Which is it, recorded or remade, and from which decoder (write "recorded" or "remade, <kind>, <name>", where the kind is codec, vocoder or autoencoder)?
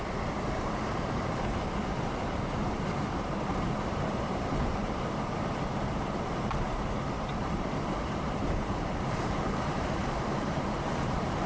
remade, vocoder, BigVGAN v2